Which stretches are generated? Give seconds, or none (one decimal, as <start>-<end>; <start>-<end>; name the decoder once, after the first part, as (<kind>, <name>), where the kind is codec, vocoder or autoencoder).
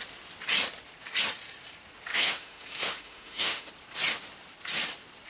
2.1-3.7 (autoencoder, DAC-VAE)